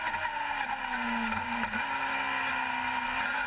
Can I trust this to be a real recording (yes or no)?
yes